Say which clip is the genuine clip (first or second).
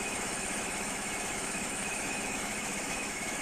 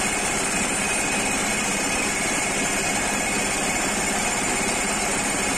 second